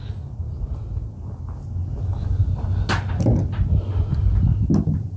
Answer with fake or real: real